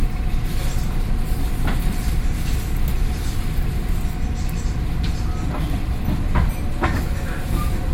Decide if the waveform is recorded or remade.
recorded